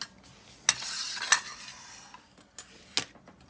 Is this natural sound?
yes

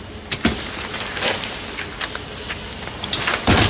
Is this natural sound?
yes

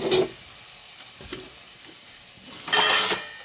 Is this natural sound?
yes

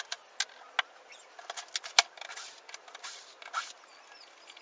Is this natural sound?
yes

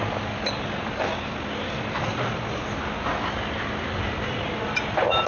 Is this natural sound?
yes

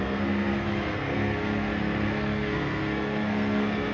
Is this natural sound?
no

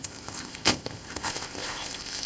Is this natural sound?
no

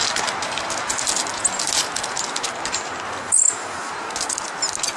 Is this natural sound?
yes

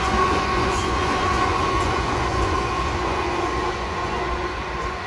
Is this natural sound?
no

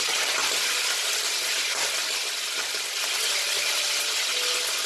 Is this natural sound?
yes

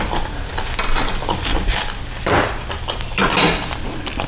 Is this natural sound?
yes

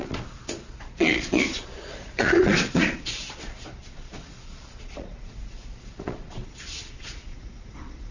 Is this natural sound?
no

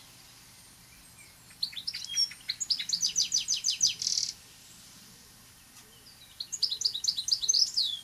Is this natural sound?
yes